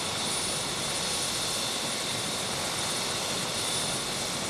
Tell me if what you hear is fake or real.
real